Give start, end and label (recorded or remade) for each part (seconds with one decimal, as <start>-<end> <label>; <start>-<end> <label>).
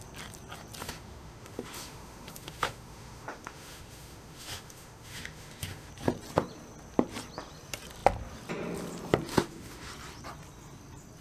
0.0-0.8 recorded; 0.8-5.9 remade; 5.9-9.3 recorded; 9.3-9.9 remade; 9.9-11.2 recorded